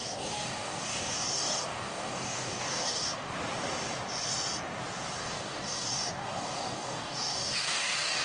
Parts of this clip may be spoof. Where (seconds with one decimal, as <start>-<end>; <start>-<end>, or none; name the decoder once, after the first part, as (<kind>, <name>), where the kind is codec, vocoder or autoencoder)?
0.0-3.3 (codec, DAC); 5.2-8.2